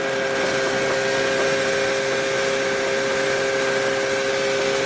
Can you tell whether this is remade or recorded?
recorded